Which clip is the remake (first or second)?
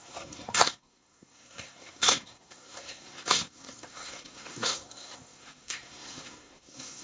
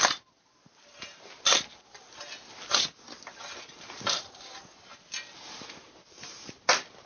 first